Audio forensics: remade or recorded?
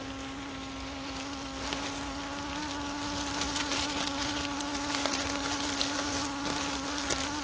recorded